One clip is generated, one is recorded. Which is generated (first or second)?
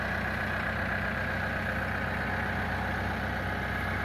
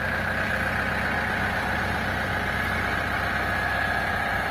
second